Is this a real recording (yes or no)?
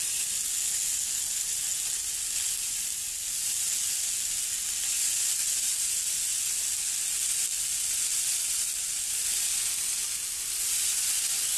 yes